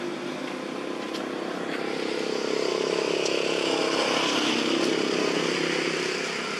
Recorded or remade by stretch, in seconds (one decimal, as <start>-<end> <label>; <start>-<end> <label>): 0.0-2.7 recorded; 2.7-3.8 remade; 3.8-6.6 recorded